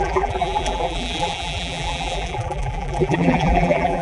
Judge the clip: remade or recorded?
remade